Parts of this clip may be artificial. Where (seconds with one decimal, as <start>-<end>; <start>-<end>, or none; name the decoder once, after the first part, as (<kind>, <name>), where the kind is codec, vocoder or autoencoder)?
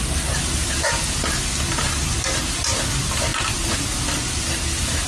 none